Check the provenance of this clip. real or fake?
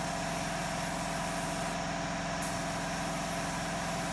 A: real